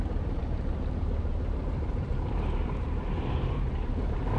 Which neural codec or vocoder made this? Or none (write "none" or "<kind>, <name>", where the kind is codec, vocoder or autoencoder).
vocoder, BigVGAN v2